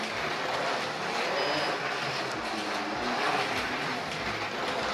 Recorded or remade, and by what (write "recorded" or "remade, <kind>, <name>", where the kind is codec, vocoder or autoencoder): recorded